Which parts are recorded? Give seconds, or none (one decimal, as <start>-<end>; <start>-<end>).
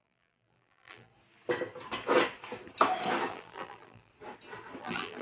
1.1-3.3; 4.1-4.8